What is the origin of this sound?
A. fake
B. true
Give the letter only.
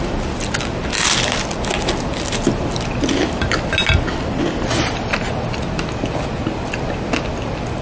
B